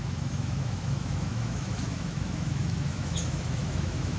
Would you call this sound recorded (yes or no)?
no